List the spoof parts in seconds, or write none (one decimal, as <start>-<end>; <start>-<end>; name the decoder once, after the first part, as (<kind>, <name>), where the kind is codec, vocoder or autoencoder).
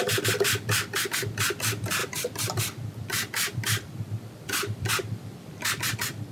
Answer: 2.0-5.8 (vocoder, BigVGAN v2)